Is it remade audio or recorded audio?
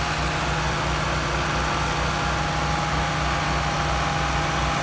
recorded